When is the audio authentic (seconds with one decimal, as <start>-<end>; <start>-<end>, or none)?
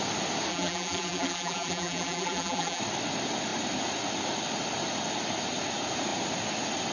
0.0-0.5; 2.8-6.9